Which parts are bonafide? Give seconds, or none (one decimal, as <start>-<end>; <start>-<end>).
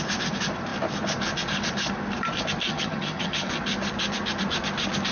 0.0-2.7; 3.5-5.1